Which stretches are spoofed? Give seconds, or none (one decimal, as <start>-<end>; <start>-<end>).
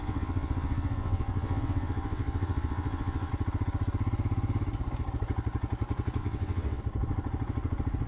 0.0-3.3; 6.2-6.8